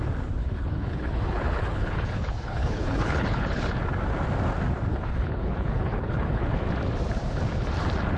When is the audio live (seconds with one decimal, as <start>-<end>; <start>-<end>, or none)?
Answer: 0.0-0.4; 3.7-4.9; 6.6-8.2